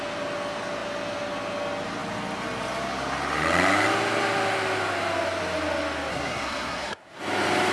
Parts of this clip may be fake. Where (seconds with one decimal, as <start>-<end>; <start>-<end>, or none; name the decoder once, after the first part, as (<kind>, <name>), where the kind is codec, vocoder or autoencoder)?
6.1-7.2 (codec, SNAC)